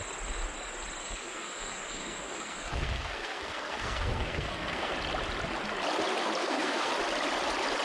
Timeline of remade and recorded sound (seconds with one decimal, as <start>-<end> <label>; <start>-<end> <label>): 0.0-1.0 recorded; 1.0-4.9 remade; 4.9-6.4 recorded; 6.4-6.9 remade; 6.9-7.8 recorded